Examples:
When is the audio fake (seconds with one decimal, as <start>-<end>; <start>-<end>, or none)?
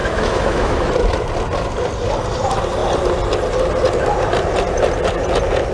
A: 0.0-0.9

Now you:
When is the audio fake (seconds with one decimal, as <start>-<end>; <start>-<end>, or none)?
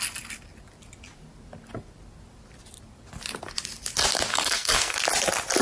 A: 4.3-5.0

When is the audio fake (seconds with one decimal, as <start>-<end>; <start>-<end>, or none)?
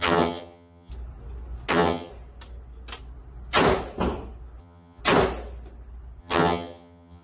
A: 0.0-0.9; 1.7-2.1; 4.6-5.0; 6.2-7.2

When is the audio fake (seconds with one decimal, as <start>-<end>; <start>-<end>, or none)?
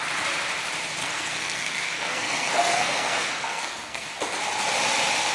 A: 1.0-4.2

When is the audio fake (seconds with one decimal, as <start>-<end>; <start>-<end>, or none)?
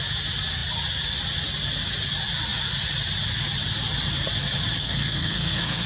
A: 4.8-5.9